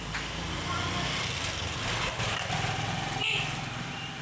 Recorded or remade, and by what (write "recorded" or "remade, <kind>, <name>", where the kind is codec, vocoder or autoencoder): recorded